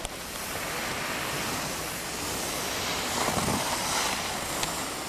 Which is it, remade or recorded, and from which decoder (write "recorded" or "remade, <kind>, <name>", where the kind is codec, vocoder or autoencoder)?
recorded